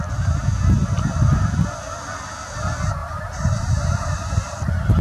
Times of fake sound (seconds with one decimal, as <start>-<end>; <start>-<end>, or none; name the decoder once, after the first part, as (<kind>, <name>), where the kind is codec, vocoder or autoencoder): 3.0-4.3 (vocoder, BigVGAN v2)